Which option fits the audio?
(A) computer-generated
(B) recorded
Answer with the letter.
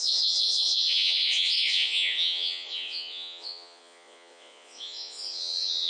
A